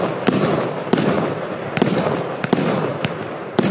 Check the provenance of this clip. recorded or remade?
recorded